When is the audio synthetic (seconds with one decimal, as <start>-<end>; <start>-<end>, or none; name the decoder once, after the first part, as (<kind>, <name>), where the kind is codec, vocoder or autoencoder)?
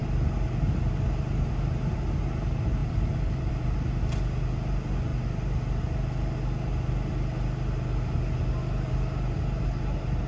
2.8-3.5 (vocoder, BigVGAN v2)